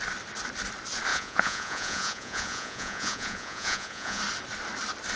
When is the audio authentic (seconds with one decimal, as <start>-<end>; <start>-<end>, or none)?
0.0-1.1; 4.2-5.2